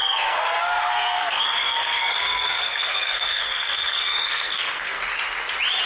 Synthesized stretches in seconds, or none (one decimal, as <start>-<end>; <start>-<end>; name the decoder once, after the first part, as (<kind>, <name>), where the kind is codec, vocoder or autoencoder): 0.0-5.0 (codec, SNAC)